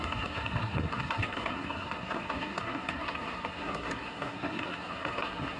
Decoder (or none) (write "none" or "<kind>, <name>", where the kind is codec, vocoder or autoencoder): codec, SNAC